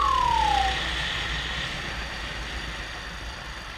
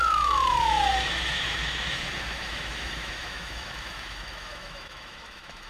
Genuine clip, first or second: first